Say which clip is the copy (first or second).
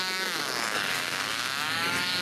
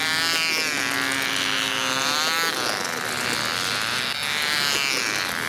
first